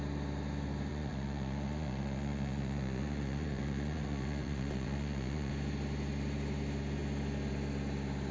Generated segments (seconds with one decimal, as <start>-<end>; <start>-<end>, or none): 0.9-5.5